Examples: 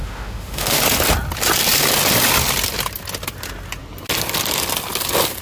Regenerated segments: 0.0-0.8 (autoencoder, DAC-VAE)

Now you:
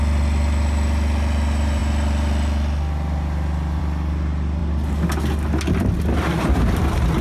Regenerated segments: none

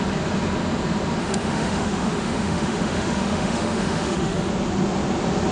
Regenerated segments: 1.2-4.5 (autoencoder, DAC-VAE)

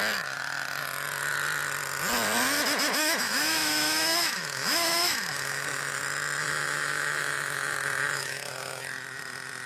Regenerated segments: 2.9-6.0 (autoencoder, DAC-VAE); 6.4-8.8

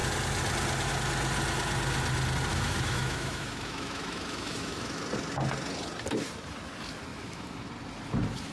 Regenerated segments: 2.5-5.0 (autoencoder, DAC-VAE); 7.1-7.7